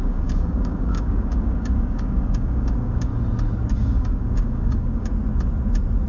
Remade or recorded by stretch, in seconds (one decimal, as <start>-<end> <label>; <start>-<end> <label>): 0.0-3.1 remade; 3.1-3.7 recorded; 3.7-5.1 remade; 5.1-6.1 recorded